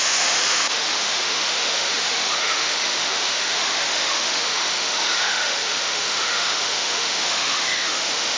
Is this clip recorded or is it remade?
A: remade